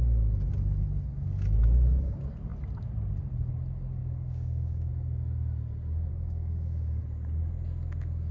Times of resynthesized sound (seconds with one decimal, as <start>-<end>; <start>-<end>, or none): 4.0-4.9; 6.1-7.0